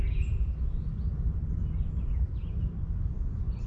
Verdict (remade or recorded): recorded